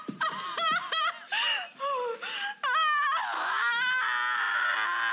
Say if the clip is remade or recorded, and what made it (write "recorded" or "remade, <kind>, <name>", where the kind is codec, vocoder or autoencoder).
recorded